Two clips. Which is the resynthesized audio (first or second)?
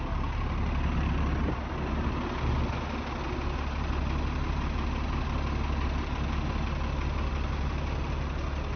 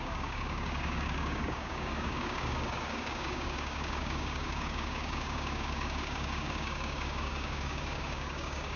second